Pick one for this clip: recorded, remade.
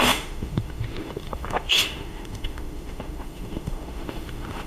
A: remade